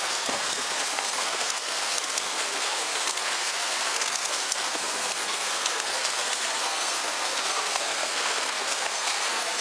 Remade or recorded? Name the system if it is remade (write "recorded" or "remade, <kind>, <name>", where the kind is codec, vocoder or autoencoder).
remade, codec, SNAC